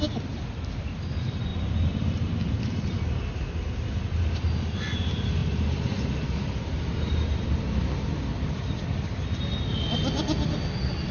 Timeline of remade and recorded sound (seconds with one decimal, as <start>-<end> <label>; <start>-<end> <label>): 0.0-5.4 recorded; 5.4-7.5 remade; 7.5-11.1 recorded